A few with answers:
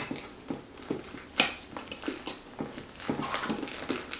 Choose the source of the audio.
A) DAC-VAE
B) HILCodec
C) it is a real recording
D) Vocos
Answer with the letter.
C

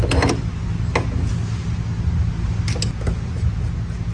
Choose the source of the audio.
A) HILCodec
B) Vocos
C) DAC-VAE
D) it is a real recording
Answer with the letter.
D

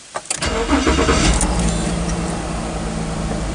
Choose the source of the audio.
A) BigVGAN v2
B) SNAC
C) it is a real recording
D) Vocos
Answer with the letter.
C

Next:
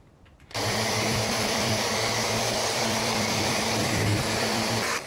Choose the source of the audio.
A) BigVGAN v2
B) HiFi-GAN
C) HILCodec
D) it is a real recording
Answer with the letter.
A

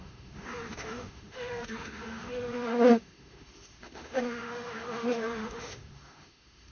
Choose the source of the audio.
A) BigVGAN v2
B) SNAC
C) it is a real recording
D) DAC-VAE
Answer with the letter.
D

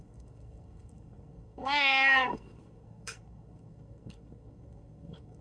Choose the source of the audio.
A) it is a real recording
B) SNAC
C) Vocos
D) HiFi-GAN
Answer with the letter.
B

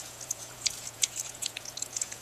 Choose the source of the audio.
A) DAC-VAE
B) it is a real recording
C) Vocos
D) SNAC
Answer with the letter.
C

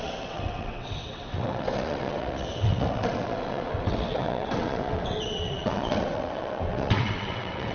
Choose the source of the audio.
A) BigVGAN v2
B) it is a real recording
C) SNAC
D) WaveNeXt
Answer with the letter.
D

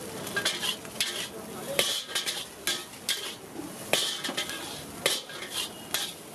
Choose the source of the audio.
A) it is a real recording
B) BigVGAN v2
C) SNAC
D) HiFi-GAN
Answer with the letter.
A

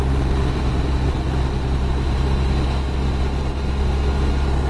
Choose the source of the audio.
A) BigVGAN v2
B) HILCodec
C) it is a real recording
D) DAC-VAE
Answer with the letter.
C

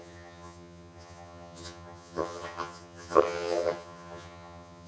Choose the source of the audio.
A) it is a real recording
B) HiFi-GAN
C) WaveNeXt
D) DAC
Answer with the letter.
B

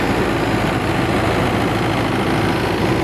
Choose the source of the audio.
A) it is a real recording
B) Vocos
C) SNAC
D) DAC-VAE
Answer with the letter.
A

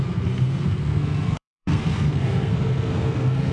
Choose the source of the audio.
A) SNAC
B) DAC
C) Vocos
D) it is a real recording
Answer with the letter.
A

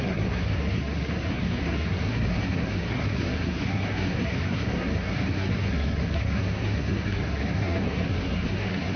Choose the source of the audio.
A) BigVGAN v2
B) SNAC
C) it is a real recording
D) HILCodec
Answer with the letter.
B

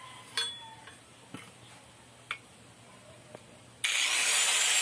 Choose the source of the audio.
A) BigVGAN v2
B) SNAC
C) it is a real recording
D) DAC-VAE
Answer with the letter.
C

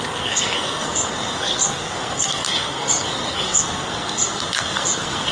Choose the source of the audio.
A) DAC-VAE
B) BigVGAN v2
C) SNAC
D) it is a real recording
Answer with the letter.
C